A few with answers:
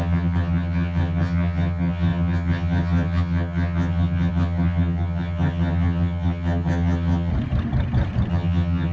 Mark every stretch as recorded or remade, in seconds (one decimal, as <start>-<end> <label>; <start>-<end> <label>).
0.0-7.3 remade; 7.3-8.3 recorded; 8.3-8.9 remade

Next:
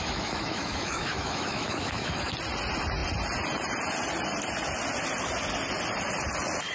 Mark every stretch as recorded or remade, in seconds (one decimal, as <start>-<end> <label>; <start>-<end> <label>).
0.0-2.3 remade; 2.3-6.7 recorded

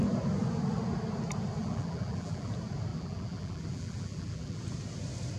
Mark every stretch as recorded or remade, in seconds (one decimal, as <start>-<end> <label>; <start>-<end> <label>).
0.0-1.6 recorded; 1.6-2.5 remade; 2.5-2.9 recorded; 2.9-4.6 remade; 4.6-5.4 recorded

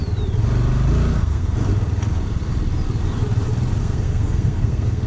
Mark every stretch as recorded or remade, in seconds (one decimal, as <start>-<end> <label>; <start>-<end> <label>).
0.0-1.1 recorded; 1.1-1.7 remade; 1.7-3.8 recorded; 3.8-5.1 remade